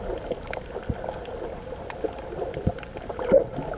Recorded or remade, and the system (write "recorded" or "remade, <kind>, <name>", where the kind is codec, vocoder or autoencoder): recorded